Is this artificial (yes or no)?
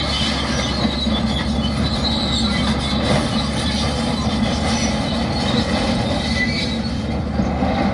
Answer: no